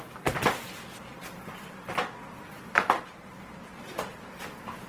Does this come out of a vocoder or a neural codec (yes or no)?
no